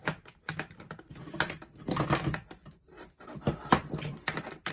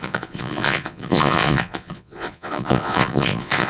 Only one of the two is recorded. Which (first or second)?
first